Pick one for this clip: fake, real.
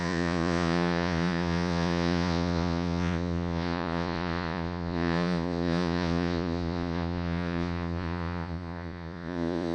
fake